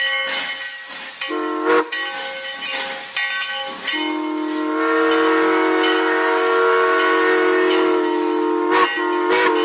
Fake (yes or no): no